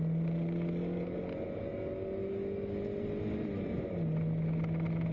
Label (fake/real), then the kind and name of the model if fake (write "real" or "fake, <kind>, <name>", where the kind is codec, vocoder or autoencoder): real